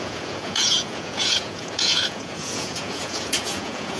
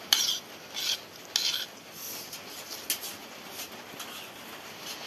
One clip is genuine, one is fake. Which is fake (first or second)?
first